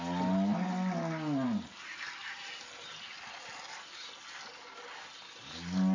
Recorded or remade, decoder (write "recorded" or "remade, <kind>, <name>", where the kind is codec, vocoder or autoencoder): recorded